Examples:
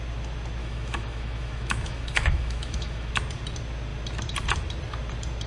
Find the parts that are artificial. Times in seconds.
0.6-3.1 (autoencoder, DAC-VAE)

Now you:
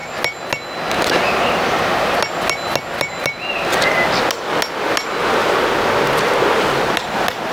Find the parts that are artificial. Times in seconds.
none

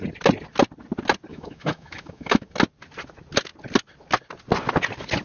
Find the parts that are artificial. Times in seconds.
1.3-2.5 (autoencoder, DAC-VAE)

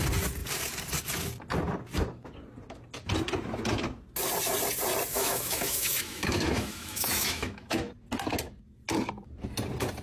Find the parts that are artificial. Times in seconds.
5.1-7.9 (autoencoder, DAC-VAE)

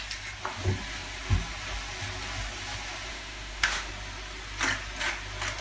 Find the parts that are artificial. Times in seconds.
3.1-3.9 (autoencoder, DAC-VAE)